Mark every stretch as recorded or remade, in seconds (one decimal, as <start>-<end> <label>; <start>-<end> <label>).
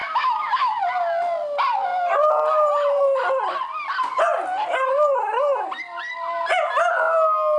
0.0-0.8 remade; 0.8-7.6 recorded